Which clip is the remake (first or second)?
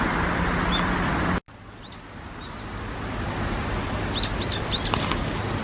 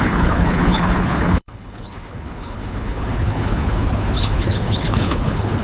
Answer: second